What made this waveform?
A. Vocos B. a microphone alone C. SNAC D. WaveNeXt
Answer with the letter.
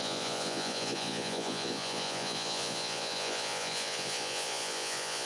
A